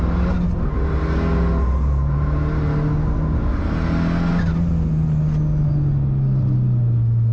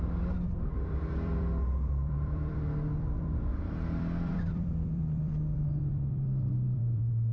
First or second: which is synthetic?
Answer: second